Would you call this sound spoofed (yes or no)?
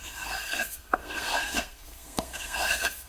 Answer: yes